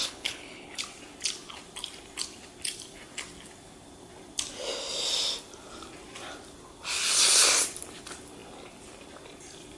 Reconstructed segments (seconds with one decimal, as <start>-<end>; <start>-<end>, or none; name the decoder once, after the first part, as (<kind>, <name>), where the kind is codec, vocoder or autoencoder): 0.0-0.8 (codec, HILCodec)